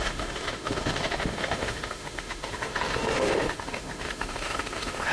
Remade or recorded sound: remade